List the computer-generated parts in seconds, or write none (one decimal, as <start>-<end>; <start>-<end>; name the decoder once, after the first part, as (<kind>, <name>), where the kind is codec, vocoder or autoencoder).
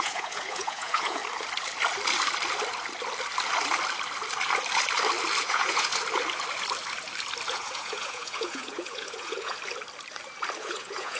0.0-1.2 (vocoder, Vocos); 5.4-5.9; 7.5-9.6; 10.6-11.2